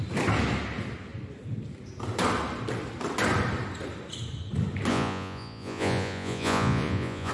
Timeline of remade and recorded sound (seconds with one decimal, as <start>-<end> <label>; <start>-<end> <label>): 0.0-4.9 recorded; 4.9-7.3 remade

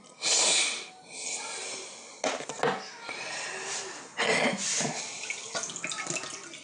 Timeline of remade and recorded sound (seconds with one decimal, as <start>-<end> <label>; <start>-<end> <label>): 0.0-6.6 recorded

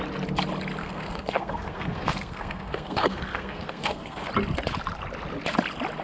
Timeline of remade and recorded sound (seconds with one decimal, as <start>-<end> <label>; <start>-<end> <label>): 0.0-0.8 recorded; 0.8-4.3 remade; 4.3-6.0 recorded